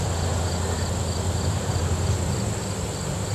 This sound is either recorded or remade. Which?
recorded